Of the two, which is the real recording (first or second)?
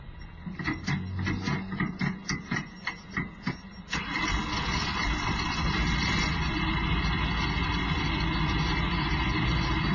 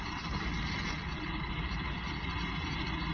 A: first